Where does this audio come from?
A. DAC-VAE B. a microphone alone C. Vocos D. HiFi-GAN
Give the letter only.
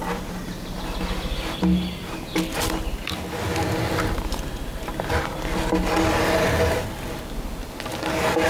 B